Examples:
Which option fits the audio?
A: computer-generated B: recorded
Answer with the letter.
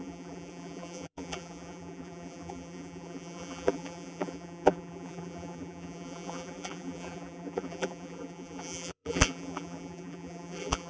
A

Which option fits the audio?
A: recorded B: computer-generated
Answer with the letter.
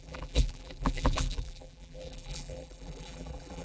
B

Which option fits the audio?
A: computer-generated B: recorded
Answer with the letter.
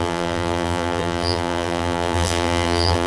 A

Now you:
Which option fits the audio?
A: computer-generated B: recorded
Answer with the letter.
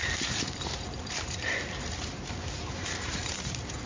A